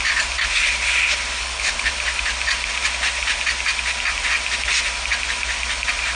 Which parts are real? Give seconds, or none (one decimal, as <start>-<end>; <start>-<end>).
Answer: 0.0-1.4; 1.9-6.2